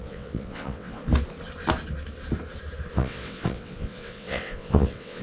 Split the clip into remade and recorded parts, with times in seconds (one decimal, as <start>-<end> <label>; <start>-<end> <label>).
0.0-1.0 remade; 1.0-2.9 recorded; 2.9-5.2 remade